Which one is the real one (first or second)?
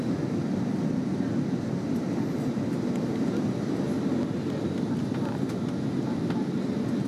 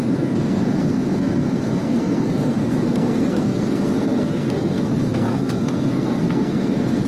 first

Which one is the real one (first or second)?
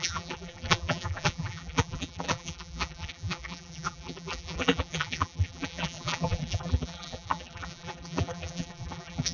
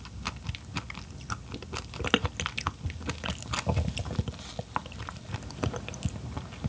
second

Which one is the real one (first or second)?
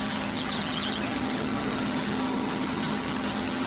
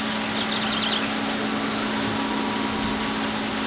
second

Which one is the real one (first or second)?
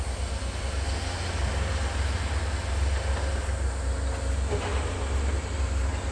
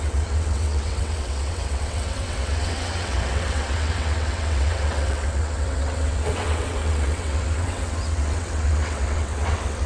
first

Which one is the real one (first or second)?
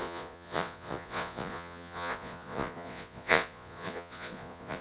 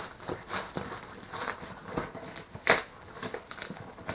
second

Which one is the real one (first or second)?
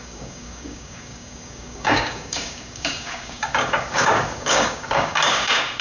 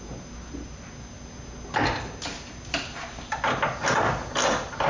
second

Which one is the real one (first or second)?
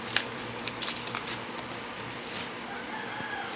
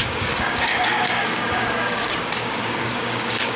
first